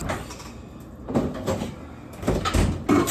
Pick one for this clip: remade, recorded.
recorded